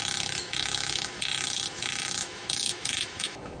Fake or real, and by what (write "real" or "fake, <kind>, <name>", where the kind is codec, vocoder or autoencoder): fake, autoencoder, DAC-VAE